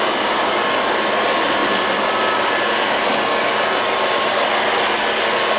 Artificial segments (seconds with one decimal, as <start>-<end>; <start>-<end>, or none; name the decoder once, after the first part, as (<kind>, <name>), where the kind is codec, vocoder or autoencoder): none